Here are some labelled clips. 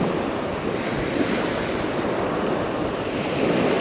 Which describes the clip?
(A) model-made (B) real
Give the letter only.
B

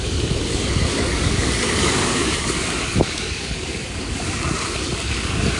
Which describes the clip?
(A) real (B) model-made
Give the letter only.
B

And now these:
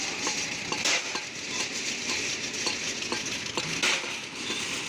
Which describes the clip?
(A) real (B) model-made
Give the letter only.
A